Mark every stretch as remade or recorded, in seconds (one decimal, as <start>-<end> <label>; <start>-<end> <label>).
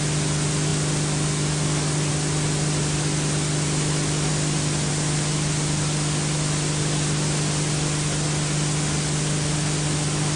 0.0-10.4 recorded